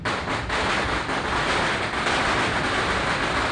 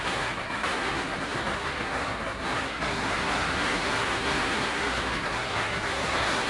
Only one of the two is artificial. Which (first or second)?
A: second